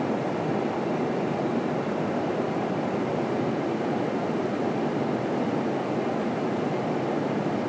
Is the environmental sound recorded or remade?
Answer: recorded